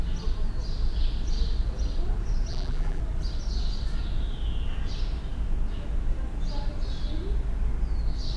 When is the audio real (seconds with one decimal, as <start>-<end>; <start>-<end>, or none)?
0.0-2.5; 3.0-8.4